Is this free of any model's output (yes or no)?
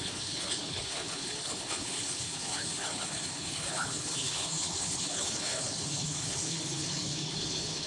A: no